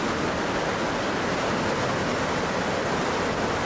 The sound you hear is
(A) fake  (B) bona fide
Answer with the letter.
B